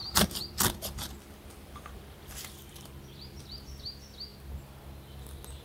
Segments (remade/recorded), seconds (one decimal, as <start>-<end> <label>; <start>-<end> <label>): 0.0-3.4 remade; 3.4-5.6 recorded